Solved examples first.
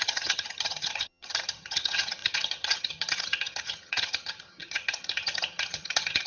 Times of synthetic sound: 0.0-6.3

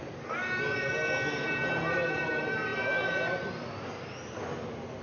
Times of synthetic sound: none

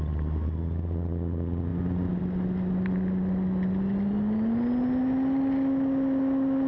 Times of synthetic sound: none

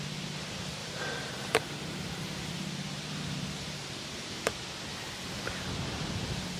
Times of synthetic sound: 0.8-4.3

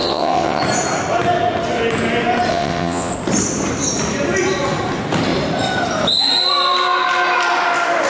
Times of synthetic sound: 0.0-0.6; 2.5-3.1